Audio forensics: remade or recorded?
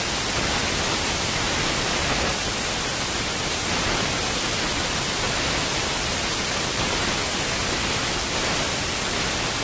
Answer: recorded